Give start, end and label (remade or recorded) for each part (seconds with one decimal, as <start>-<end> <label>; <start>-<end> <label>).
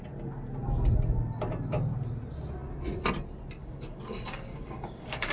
0.0-3.6 recorded; 3.6-5.3 remade